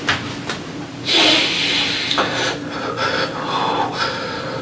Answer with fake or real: real